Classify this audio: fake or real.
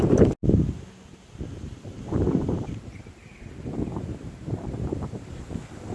real